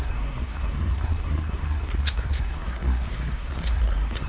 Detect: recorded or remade remade